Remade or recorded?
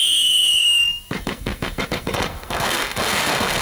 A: remade